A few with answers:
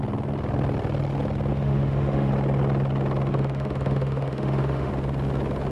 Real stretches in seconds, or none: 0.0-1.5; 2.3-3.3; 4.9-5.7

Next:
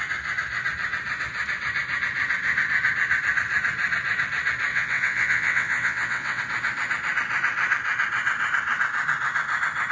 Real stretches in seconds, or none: 0.0-4.7; 6.4-9.9

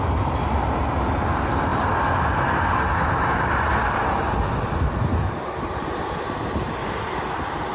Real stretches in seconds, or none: 0.0-7.7

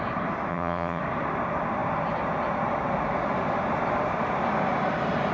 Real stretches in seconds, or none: 0.0-0.5; 1.0-5.3